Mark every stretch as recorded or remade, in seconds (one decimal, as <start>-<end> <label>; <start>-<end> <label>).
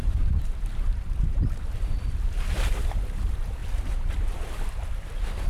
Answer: 0.0-3.6 remade; 3.6-4.3 recorded; 4.3-5.5 remade